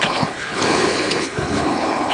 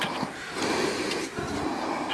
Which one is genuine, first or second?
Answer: second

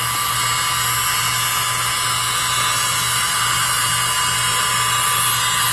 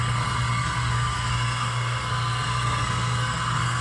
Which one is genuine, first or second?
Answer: first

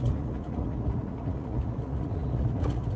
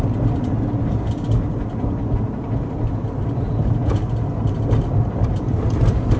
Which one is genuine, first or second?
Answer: second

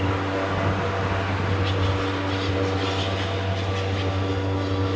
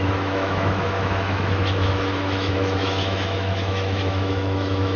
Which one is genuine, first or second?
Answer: first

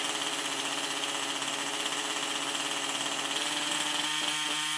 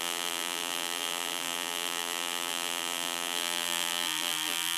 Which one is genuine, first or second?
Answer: first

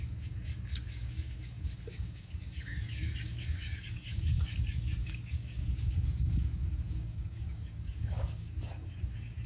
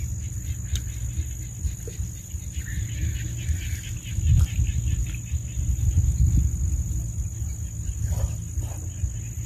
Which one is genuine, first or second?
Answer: second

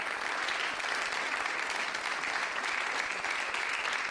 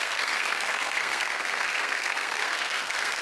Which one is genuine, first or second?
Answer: first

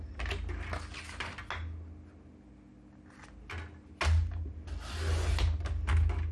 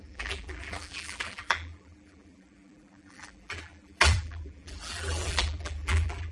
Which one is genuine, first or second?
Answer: first